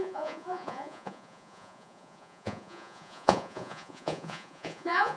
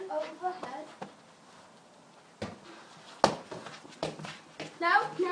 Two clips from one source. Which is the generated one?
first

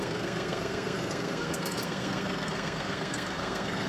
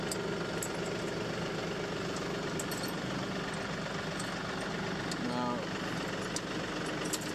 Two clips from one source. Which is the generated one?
first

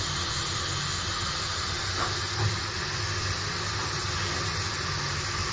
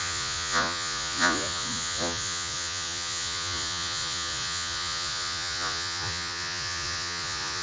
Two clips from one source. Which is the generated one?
second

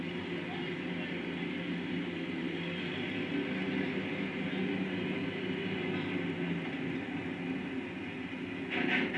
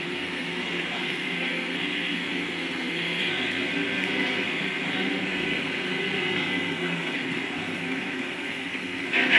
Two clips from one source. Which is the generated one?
second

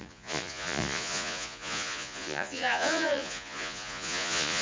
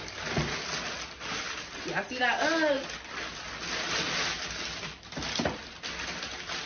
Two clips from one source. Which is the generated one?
first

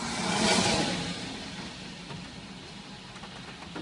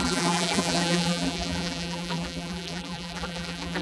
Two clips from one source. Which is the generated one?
second